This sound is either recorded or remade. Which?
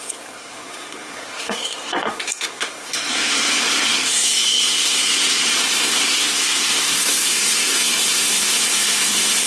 remade